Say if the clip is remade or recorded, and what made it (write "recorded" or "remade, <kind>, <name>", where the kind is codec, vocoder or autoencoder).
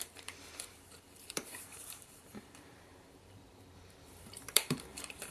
remade, vocoder, BigVGAN v2